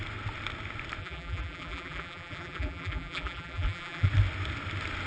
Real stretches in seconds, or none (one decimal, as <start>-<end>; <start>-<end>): 0.0-1.0; 4.1-5.1